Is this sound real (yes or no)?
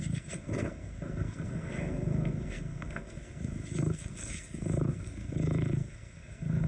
no